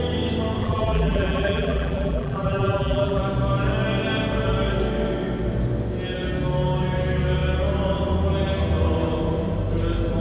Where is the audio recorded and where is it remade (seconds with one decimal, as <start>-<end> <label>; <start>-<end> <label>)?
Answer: 0.0-0.6 recorded; 0.6-3.2 remade; 3.2-10.2 recorded